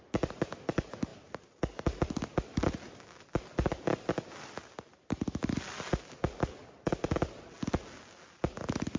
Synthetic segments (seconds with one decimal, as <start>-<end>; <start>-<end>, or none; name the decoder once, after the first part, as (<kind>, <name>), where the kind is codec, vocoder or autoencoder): none